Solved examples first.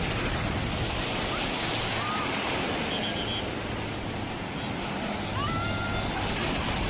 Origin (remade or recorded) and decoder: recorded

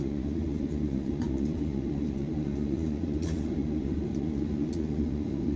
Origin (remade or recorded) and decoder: remade, vocoder, Vocos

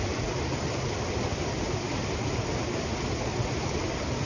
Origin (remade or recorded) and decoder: recorded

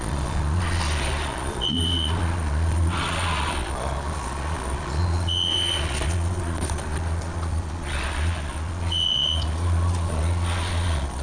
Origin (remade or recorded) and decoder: remade, vocoder, Vocos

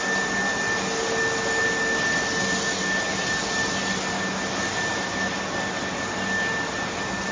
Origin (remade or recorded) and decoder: recorded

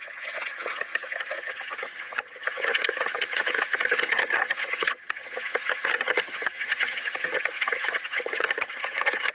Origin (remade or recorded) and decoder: remade, vocoder, HiFi-GAN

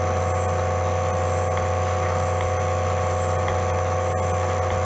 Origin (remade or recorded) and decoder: recorded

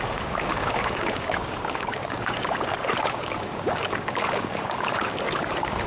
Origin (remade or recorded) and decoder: remade, codec, DAC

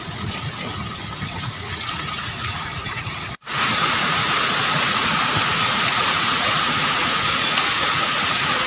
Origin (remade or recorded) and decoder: remade, vocoder, Vocos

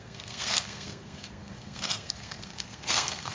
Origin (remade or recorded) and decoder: remade, codec, SNAC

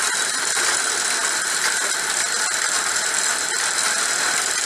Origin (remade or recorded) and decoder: recorded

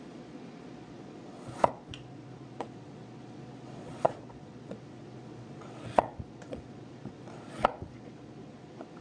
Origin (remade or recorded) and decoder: remade, vocoder, Vocos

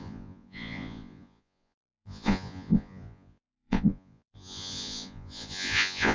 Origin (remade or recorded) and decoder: remade, vocoder, Vocos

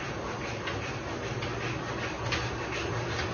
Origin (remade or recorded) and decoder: recorded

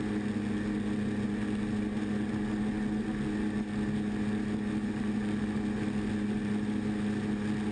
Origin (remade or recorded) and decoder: recorded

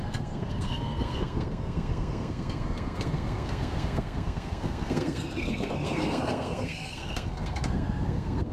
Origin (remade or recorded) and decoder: remade, codec, SNAC